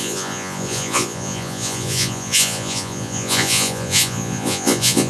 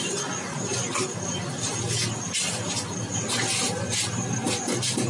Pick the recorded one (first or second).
second